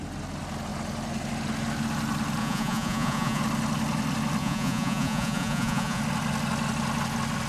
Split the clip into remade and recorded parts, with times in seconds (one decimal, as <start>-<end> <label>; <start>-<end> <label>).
0.0-2.4 recorded; 2.4-3.4 remade; 3.4-4.4 recorded; 4.4-6.0 remade; 6.0-7.5 recorded